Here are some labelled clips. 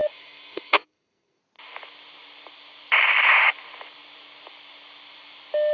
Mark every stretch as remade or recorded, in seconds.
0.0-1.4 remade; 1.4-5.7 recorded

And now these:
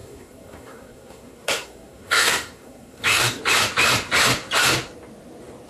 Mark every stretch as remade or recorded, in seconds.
0.0-3.4 remade; 3.4-5.7 recorded

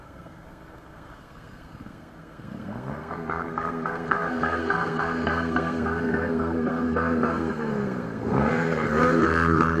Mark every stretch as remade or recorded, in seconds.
0.0-9.8 remade

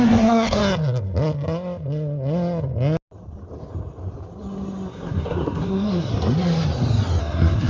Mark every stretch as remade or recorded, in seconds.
0.0-0.6 remade; 0.6-4.9 recorded; 4.9-6.1 remade; 6.1-7.2 recorded; 7.2-7.7 remade

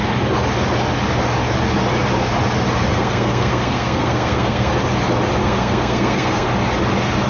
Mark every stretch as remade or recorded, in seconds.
0.0-2.9 recorded; 2.9-4.7 remade; 4.7-5.4 recorded; 5.4-6.5 remade; 6.5-7.3 recorded

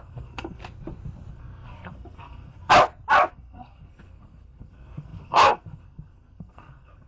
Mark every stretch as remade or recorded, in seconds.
0.0-0.6 remade; 0.6-1.3 recorded; 1.3-2.7 remade; 2.7-3.3 recorded; 3.3-7.1 remade

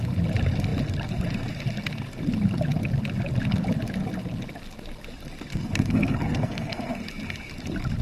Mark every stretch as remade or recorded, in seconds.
0.0-5.5 recorded; 5.5-7.0 remade; 7.0-8.0 recorded

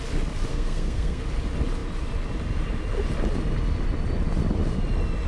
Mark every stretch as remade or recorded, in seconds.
0.0-0.5 recorded; 0.5-1.2 remade; 1.2-5.3 recorded